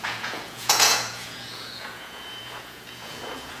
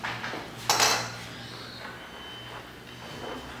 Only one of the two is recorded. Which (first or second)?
second